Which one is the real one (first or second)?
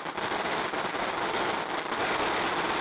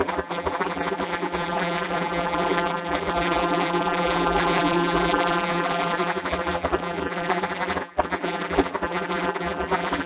first